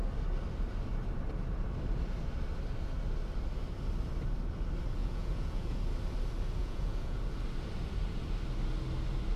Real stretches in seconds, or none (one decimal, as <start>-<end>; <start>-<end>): 0.0-5.0; 5.8-6.6; 7.2-9.4